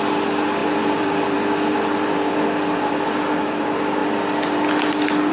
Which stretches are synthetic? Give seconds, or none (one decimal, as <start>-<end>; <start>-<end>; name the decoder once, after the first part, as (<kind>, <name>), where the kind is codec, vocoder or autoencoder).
0.6-2.3 (vocoder, BigVGAN v2)